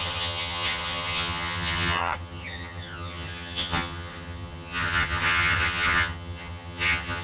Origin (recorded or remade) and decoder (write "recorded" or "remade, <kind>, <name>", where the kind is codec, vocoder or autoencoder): remade, vocoder, HiFi-GAN